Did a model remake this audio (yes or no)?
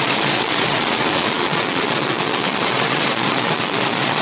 yes